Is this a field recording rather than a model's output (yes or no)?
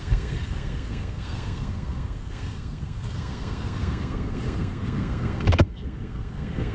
no